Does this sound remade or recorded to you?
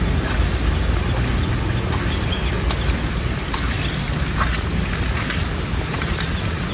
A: recorded